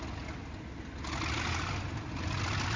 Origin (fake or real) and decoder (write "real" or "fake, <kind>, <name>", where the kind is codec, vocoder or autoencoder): real